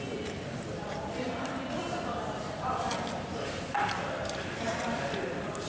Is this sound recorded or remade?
remade